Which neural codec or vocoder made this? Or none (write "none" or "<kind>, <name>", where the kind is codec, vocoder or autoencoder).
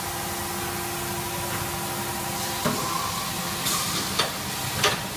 none